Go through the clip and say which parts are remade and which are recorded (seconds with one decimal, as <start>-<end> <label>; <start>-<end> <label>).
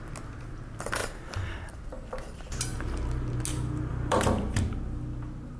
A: 0.0-1.0 recorded; 1.0-1.7 remade; 1.7-3.9 recorded; 3.9-4.8 remade; 4.8-5.6 recorded